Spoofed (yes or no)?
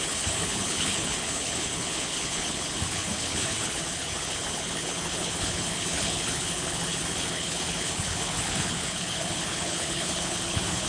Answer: yes